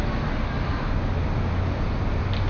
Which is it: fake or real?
real